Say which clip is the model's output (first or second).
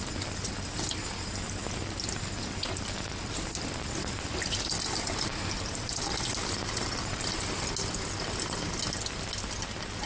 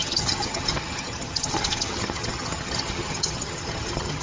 second